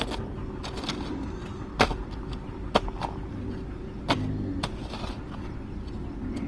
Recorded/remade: recorded